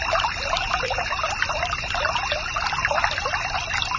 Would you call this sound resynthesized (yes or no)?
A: no